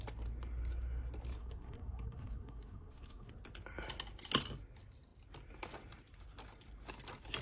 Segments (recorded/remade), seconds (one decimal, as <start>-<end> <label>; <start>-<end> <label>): 0.0-1.4 recorded; 1.4-3.3 remade; 3.3-7.4 recorded